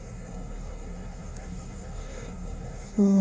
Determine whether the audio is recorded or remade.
remade